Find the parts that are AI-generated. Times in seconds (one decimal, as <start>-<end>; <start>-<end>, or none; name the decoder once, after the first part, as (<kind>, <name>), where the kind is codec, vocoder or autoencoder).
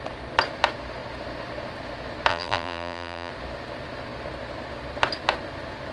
2.3-3.3 (vocoder, BigVGAN v2)